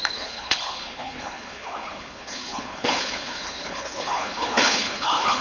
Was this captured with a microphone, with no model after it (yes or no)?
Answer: no